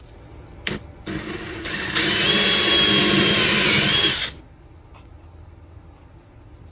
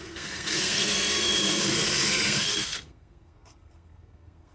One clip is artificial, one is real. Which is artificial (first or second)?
second